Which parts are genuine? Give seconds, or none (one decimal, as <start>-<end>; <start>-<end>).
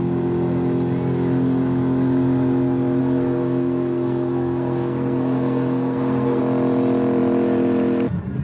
0.0-3.0; 6.4-8.4